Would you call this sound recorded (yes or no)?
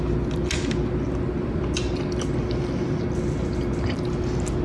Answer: yes